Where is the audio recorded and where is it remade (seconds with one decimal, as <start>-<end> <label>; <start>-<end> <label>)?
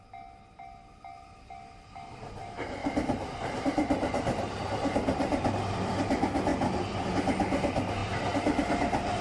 0.0-2.8 recorded; 2.8-5.5 remade; 5.5-9.2 recorded